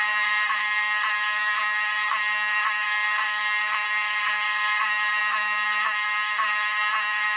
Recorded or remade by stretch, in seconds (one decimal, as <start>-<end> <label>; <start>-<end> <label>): 0.0-7.4 remade